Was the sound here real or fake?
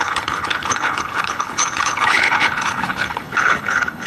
fake